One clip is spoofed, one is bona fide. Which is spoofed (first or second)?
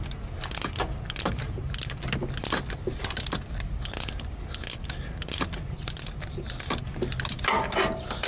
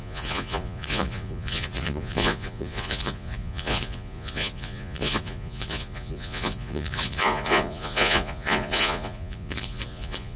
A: second